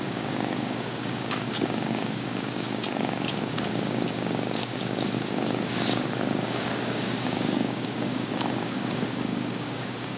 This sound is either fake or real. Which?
fake